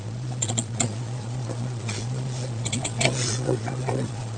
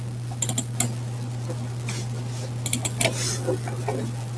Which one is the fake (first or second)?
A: first